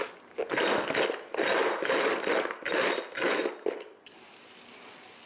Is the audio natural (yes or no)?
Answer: yes